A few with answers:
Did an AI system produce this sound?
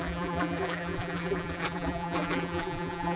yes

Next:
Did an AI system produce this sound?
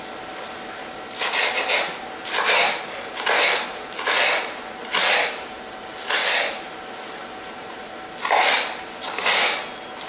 no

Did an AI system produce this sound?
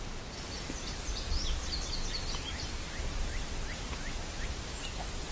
no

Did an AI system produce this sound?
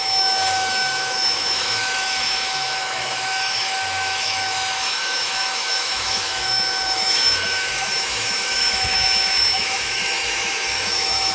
yes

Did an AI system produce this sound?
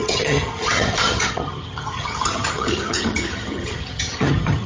yes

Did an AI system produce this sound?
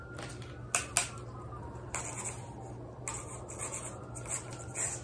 no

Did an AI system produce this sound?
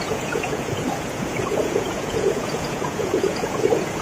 yes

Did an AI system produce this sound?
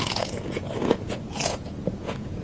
yes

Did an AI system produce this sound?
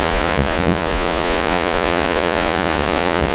yes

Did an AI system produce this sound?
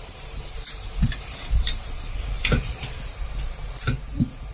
yes